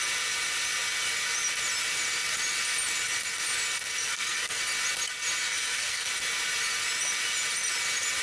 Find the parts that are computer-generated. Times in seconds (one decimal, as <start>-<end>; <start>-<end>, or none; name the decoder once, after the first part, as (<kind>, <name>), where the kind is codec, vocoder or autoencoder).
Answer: 4.0-4.6 (codec, SNAC); 5.4-6.1